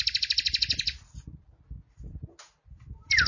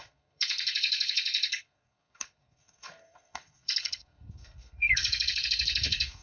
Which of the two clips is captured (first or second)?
first